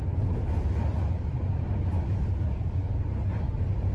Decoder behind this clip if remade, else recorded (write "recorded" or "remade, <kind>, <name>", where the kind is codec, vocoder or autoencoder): recorded